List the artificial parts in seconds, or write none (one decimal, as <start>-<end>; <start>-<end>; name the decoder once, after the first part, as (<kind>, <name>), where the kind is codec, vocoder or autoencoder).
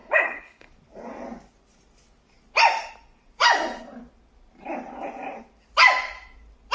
0.0-0.7 (codec, HILCodec)